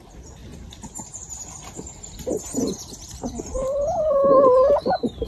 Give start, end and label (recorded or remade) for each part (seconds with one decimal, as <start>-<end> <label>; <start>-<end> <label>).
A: 0.0-5.3 recorded